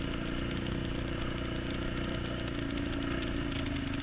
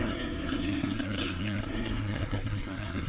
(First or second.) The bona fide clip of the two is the first